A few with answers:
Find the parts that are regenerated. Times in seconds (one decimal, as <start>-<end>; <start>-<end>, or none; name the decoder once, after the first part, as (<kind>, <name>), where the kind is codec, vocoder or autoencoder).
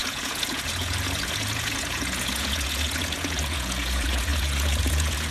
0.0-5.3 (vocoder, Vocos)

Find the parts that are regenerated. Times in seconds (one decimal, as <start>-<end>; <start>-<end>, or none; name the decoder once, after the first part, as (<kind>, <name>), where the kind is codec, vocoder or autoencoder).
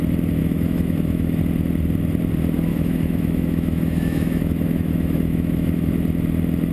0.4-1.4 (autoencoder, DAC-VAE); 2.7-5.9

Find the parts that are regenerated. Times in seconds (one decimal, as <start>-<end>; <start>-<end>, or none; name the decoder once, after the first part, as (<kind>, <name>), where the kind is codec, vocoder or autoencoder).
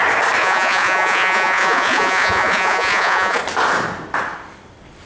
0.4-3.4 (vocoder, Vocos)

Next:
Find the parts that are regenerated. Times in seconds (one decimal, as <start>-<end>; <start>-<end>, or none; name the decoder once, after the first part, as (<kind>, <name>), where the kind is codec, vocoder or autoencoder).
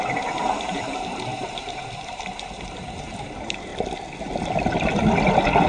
0.0-3.7 (vocoder, BigVGAN v2)